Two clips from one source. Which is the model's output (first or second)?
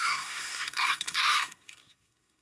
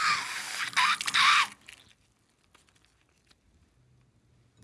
first